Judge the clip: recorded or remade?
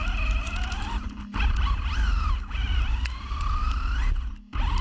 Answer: recorded